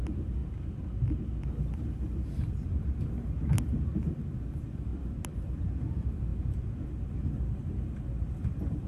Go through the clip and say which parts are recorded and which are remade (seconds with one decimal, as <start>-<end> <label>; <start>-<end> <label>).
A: 0.0-0.4 remade; 0.4-1.4 recorded; 1.4-6.3 remade; 6.3-6.9 recorded; 6.9-8.9 remade